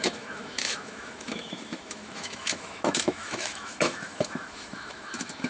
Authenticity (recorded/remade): remade